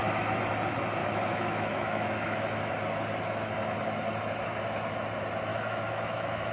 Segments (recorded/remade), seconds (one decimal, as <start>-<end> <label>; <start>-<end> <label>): 0.0-1.0 recorded; 1.0-2.7 remade; 2.7-5.5 recorded; 5.5-6.5 remade